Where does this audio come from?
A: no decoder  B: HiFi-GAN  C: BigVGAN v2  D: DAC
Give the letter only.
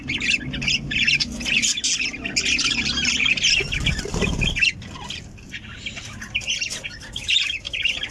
A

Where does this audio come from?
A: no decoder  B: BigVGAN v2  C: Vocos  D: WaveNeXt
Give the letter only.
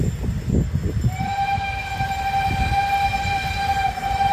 A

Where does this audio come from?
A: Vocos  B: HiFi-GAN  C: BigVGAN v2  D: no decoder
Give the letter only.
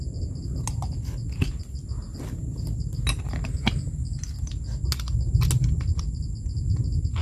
D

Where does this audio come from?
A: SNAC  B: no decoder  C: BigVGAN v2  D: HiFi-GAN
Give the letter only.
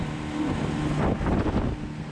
B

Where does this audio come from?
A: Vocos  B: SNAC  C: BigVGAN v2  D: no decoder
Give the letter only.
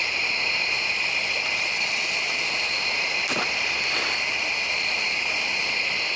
C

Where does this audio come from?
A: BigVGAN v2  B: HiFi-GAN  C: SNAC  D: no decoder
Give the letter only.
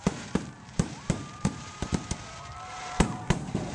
A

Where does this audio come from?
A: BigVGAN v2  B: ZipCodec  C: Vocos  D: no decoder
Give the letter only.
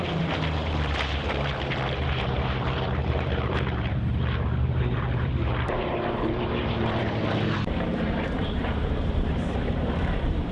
A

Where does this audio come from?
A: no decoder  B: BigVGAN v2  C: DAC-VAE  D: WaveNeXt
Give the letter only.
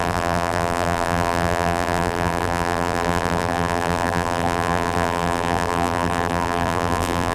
B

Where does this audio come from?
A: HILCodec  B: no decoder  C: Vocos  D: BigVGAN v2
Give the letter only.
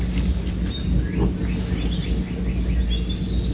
B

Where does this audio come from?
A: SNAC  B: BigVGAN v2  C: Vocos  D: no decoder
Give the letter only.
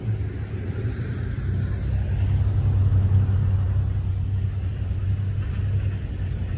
D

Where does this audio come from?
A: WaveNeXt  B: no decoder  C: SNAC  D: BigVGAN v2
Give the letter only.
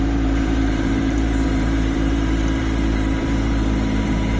D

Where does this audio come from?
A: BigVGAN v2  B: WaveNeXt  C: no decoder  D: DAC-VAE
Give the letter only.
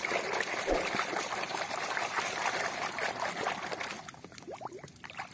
A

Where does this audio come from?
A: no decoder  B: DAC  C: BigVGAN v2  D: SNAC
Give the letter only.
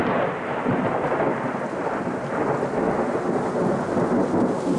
A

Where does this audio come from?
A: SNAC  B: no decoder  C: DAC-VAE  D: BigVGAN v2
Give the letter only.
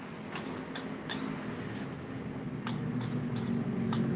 B